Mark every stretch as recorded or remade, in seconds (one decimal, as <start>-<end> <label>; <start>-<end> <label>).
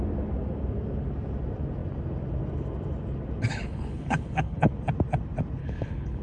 0.0-3.5 recorded; 3.5-4.7 remade; 4.7-5.6 recorded; 5.6-6.2 remade